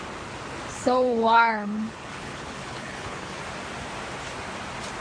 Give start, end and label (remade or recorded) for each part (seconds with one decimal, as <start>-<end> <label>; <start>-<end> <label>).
0.0-0.7 recorded; 0.7-3.4 remade; 3.4-5.0 recorded